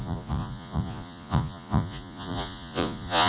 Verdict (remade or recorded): remade